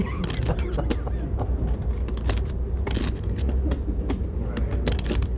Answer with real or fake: real